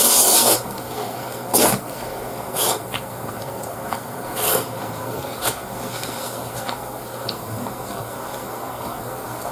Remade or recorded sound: remade